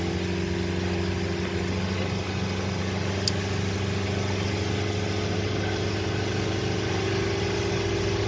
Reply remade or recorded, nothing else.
recorded